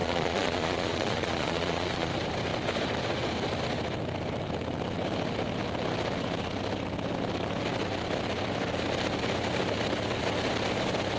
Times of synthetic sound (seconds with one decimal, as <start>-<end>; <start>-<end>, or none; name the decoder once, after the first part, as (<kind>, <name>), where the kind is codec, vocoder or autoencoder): 0.0-2.1 (vocoder, Vocos)